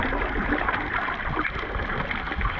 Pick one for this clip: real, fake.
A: real